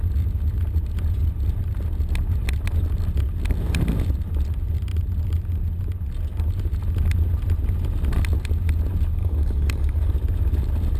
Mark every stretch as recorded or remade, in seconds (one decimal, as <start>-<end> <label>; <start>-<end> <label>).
0.0-9.2 recorded; 9.2-10.1 remade; 10.1-11.0 recorded